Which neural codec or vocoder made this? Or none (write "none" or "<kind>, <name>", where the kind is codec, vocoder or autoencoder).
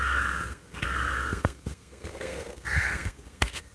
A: codec, SNAC